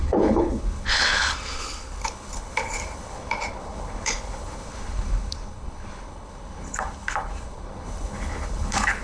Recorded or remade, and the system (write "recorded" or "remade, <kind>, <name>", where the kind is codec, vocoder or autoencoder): remade, codec, HILCodec